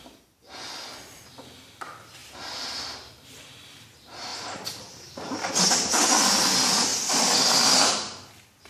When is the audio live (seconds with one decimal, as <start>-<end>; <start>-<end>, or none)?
0.0-2.2; 2.9-4.3; 5.5-8.7